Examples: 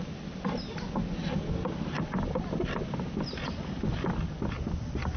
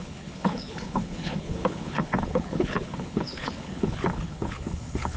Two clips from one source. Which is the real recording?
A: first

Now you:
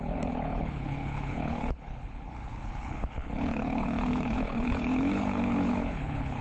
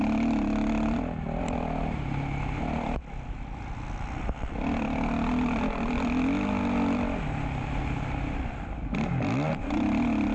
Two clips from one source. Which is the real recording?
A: second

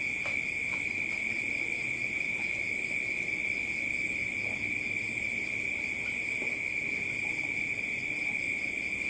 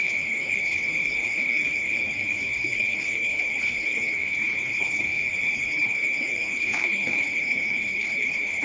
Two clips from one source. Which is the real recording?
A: first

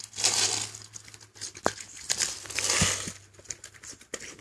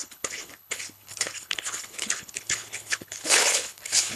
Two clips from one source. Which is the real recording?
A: first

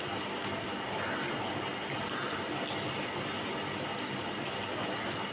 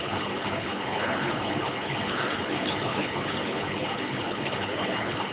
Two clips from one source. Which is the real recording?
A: first